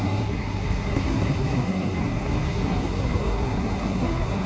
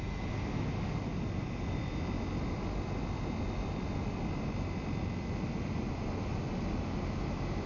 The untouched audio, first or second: second